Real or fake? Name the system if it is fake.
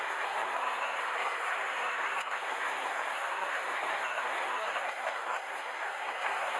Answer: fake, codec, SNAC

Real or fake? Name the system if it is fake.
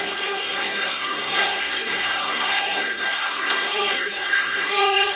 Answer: fake, codec, SNAC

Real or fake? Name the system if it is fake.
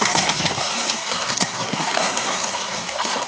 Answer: fake, codec, SNAC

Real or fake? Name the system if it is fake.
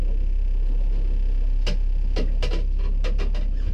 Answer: real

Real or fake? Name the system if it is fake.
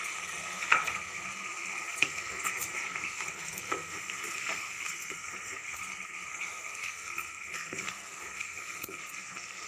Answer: fake, codec, SNAC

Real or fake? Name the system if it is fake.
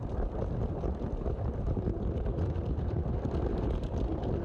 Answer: real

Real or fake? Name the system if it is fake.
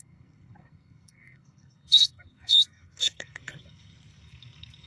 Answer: fake, codec, SNAC